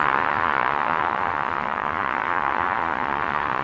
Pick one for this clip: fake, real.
fake